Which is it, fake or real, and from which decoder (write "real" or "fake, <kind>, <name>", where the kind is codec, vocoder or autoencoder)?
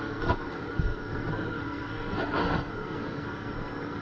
fake, codec, SNAC